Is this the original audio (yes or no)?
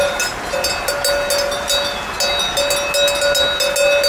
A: yes